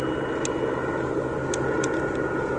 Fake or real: real